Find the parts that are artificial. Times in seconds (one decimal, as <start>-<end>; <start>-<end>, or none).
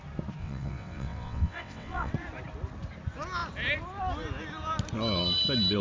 0.4-2.1